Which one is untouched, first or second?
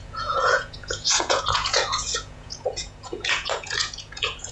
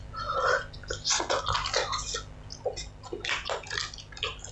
second